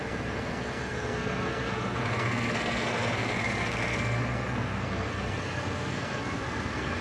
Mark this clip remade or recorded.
remade